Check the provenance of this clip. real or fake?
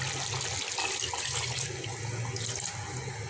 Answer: real